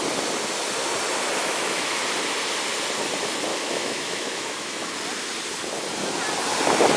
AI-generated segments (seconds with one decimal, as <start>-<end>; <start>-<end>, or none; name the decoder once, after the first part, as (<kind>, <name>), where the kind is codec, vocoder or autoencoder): 1.4-2.0 (autoencoder, DAC-VAE); 3.5-5.0